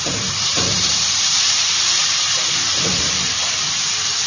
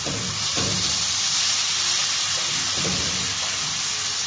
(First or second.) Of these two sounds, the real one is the second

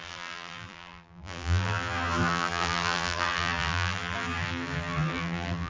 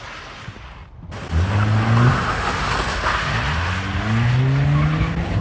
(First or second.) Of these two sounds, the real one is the second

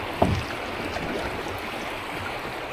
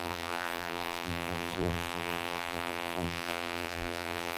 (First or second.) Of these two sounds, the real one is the first